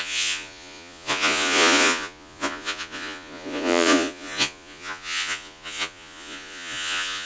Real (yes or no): no